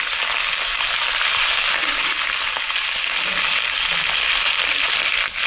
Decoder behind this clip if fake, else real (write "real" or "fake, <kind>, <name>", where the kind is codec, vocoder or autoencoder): real